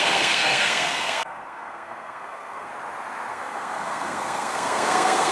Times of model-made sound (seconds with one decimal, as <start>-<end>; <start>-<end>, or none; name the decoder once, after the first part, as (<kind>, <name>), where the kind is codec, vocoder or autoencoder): 0.0-2.7 (codec, SNAC); 3.3-5.3